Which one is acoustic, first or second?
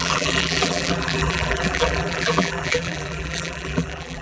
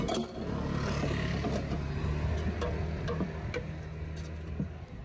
second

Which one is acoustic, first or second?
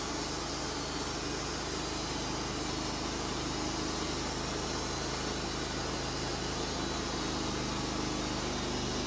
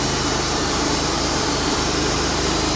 first